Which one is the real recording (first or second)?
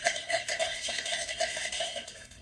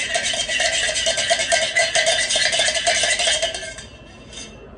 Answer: second